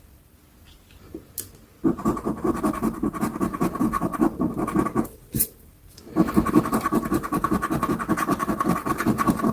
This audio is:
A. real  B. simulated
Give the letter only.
A